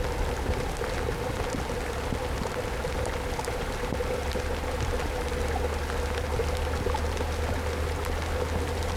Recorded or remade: recorded